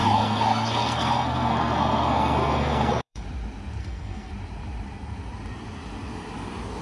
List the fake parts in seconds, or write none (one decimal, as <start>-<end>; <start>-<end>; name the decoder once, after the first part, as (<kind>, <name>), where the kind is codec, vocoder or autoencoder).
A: 0.0-3.2 (codec, SNAC); 3.8-4.3